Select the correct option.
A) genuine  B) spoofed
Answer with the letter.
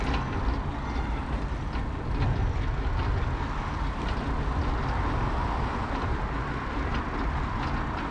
A